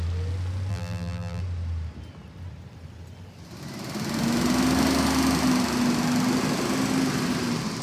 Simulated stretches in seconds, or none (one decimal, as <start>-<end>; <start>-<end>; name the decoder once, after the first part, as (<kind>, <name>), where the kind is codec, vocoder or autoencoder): 0.7-1.4 (vocoder, BigVGAN v2)